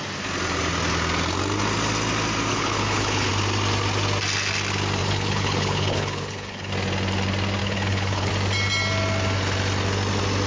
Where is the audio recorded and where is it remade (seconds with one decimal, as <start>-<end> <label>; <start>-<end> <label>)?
0.0-2.5 recorded; 2.5-3.3 remade; 3.3-5.0 recorded; 5.0-6.7 remade; 6.7-7.6 recorded; 7.6-8.3 remade; 8.3-10.5 recorded